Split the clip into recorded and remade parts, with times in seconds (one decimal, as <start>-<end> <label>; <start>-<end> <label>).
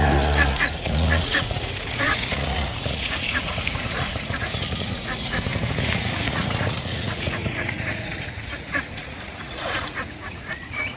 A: 0.0-11.0 remade